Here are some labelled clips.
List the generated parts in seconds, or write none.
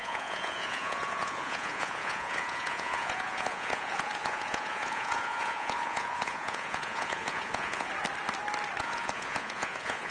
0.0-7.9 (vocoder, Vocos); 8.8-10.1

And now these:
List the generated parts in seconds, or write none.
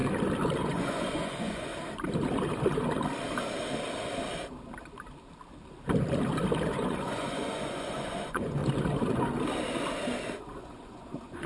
0.6-1.7 (vocoder, Vocos); 6.7-8.6; 10.4-11.5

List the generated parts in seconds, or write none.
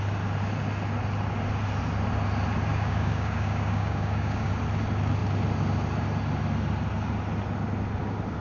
2.7-4.5 (codec, DAC)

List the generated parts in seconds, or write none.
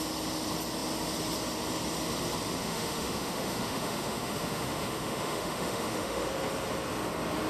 2.6-6.3 (autoencoder, DAC-VAE)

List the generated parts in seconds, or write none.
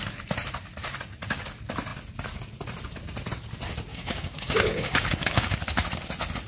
3.9-5.6 (codec, DAC)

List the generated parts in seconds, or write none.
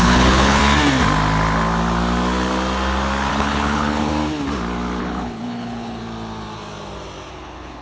0.0-0.6 (codec, HILCodec); 3.3-4.1; 5.0-6.0; 7.3-7.8